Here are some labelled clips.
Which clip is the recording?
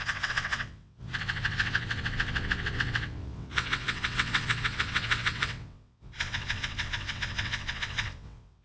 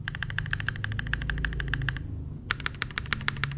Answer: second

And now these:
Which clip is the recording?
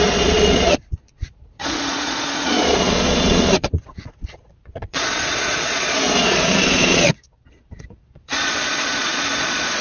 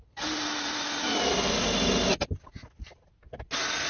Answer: second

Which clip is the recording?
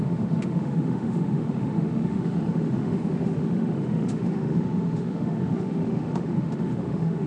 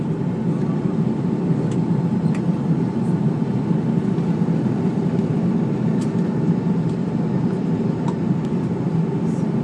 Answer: second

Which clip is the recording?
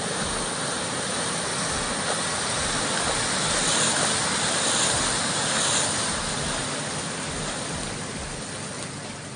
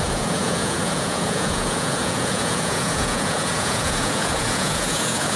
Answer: first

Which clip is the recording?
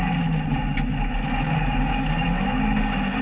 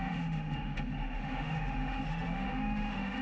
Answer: first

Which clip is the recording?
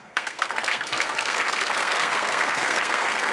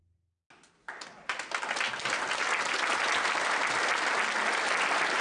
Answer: second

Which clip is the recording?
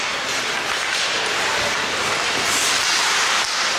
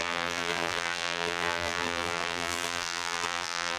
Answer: first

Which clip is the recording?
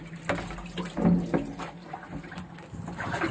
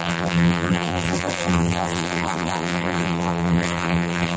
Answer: first